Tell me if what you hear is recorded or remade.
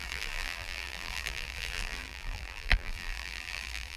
remade